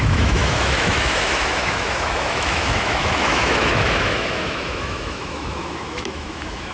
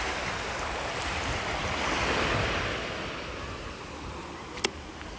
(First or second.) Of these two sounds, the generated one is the first